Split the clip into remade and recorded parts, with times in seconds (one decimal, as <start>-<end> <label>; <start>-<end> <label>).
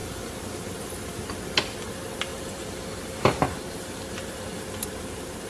0.0-2.3 recorded; 2.3-4.6 remade; 4.6-5.5 recorded